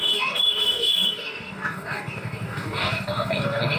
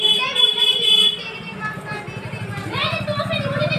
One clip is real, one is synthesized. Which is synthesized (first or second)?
first